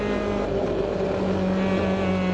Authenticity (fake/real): real